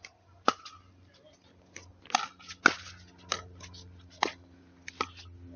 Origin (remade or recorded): recorded